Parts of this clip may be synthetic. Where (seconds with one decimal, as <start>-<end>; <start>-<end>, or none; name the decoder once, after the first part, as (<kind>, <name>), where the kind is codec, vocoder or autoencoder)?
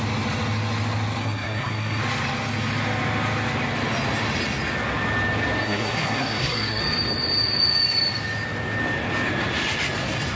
1.2-2.0 (codec, SNAC); 5.6-6.8